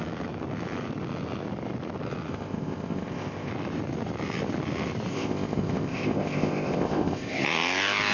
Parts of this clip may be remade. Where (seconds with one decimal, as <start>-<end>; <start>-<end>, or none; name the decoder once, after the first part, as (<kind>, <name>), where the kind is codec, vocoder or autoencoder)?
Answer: 2.3-3.5 (codec, ZipCodec); 5.1-7.4